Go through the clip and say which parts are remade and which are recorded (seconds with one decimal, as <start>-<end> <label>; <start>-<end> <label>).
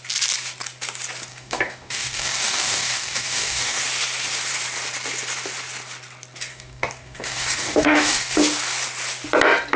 0.0-1.3 recorded; 1.3-3.8 remade; 3.8-6.5 recorded; 6.5-8.4 remade; 8.4-9.8 recorded